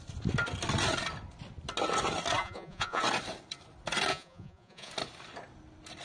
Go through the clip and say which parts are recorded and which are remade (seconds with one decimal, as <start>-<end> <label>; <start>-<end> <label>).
0.0-2.4 recorded; 2.4-3.0 remade; 3.0-4.1 recorded; 4.1-4.9 remade; 4.9-6.0 recorded